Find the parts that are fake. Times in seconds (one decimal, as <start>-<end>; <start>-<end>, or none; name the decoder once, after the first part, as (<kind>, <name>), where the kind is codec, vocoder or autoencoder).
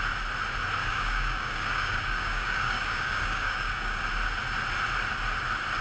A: 0.8-4.0 (codec, DAC)